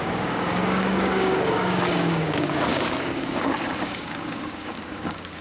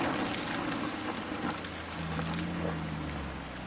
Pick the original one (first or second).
second